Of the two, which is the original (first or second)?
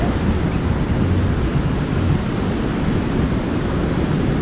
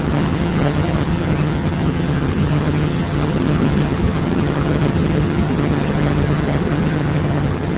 first